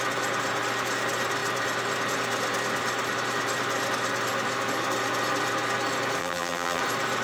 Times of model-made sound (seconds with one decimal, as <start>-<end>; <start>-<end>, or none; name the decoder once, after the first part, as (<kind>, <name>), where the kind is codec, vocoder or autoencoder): 6.2-6.8 (vocoder, BigVGAN v2)